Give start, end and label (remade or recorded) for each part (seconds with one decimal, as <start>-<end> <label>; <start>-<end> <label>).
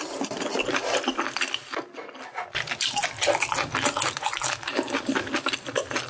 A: 0.0-6.1 recorded